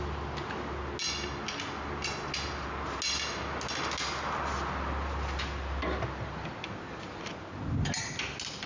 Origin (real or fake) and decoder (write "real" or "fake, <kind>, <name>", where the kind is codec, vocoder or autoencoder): real